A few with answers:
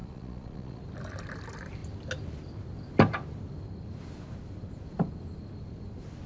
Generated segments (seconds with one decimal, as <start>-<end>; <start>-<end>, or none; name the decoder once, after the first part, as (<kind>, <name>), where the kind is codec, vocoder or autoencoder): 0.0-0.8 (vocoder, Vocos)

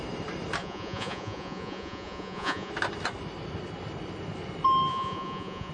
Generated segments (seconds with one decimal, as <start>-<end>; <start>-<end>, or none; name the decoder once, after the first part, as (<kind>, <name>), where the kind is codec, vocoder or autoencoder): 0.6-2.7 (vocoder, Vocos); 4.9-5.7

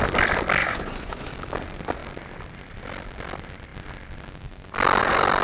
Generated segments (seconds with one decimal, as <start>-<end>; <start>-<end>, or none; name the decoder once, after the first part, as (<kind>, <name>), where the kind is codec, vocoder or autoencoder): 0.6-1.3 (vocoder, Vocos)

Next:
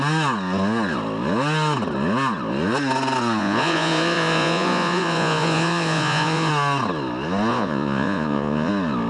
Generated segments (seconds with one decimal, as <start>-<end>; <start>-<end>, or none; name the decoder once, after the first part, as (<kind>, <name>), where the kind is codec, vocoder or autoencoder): 3.4-6.5 (vocoder, Vocos); 7.5-8.7

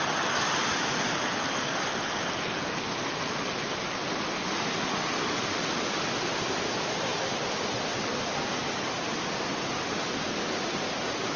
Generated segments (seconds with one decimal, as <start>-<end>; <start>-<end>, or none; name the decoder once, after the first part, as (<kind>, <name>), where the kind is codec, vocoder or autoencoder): none